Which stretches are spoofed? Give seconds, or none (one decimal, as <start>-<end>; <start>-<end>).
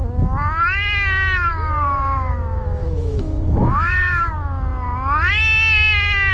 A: 1.5-4.3